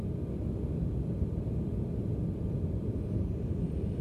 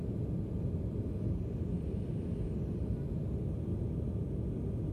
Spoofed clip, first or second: first